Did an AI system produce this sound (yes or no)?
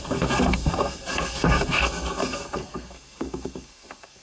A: yes